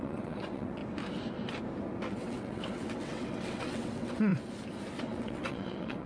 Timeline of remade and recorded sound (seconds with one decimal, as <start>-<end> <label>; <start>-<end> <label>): 0.0-0.8 remade; 0.8-2.1 recorded; 2.1-4.3 remade; 4.3-5.0 recorded; 5.0-6.1 remade